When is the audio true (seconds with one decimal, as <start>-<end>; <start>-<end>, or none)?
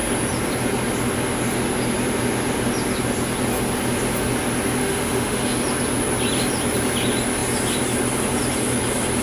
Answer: 0.0-4.8; 5.5-9.2